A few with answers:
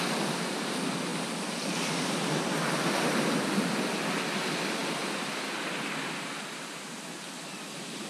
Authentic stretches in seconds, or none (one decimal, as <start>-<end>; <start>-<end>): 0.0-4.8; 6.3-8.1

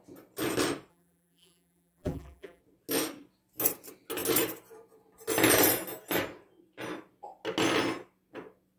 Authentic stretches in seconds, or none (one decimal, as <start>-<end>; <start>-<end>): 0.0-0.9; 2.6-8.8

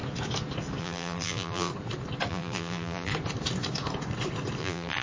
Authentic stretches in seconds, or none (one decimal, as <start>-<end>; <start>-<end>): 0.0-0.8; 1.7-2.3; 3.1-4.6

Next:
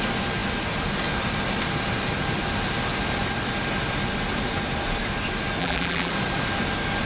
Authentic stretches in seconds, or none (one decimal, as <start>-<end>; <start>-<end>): 0.0-5.6; 6.1-7.1

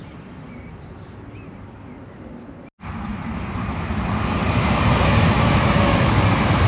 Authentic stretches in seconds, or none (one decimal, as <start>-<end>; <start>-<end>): 0.0-3.1; 3.9-4.4; 4.9-6.7

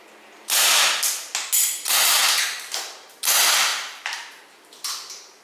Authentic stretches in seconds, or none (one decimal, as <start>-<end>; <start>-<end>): 0.0-3.7; 4.7-5.4